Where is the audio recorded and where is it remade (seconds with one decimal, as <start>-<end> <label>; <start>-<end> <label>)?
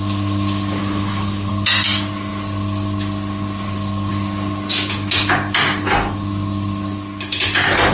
0.0-0.8 recorded; 0.8-1.5 remade; 1.5-7.9 recorded